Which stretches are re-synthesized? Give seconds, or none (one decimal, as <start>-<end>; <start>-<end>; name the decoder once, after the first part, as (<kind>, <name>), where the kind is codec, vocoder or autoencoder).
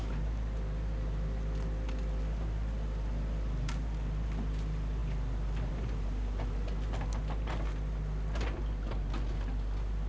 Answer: none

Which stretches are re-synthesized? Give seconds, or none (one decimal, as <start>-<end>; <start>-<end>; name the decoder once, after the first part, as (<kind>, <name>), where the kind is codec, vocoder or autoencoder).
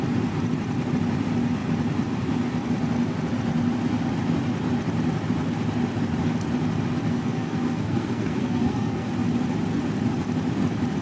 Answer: 7.1-9.1 (codec, SNAC)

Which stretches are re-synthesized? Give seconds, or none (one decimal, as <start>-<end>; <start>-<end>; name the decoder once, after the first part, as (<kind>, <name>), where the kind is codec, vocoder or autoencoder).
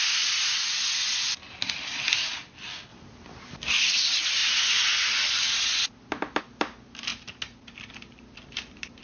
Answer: none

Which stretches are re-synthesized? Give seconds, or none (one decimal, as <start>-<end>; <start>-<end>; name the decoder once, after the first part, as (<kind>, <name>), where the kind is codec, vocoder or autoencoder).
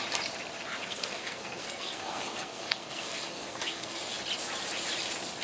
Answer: 0.8-4.0 (codec, SNAC)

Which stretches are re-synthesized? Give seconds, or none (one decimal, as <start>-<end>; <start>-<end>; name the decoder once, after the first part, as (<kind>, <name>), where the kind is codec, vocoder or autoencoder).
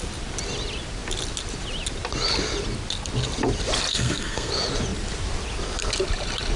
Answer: 3.9-4.5 (codec, SNAC)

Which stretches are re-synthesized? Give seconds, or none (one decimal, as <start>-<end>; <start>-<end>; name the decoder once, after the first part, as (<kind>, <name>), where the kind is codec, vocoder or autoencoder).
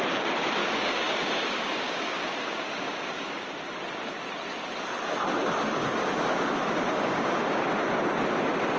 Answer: 0.6-3.3 (codec, DAC); 5.8-7.7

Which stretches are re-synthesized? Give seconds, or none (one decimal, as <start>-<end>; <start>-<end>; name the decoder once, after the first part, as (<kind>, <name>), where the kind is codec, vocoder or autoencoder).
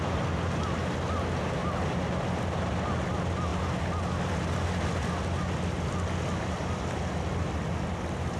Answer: none